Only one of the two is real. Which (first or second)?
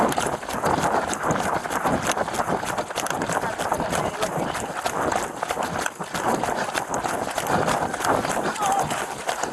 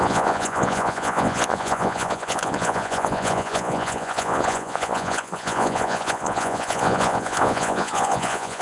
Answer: first